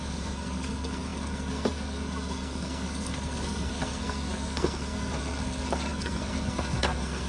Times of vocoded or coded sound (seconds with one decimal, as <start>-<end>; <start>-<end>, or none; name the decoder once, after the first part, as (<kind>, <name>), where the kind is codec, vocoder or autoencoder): 0.0-7.3 (codec, SNAC)